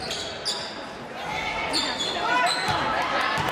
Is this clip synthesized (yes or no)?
no